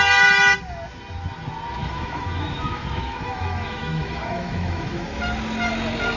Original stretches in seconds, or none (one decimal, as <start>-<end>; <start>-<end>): 0.0-1.8; 5.2-6.2